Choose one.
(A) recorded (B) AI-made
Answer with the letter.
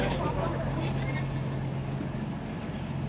A